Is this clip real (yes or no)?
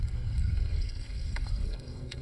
no